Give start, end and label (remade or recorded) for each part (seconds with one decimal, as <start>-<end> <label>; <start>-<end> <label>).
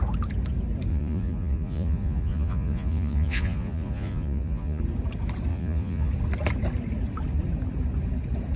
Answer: 0.0-0.9 recorded; 0.9-4.8 remade; 4.8-5.5 recorded; 5.5-6.1 remade; 6.1-8.6 recorded